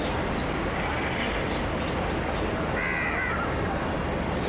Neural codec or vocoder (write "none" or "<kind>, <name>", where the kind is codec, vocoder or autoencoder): none